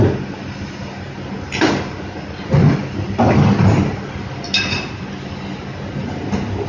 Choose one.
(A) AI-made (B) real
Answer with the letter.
B